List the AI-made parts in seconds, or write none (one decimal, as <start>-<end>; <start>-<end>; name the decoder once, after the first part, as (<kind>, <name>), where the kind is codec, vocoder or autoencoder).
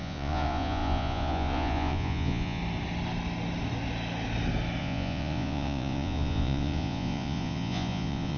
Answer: 0.0-2.6 (vocoder, Vocos); 4.8-8.4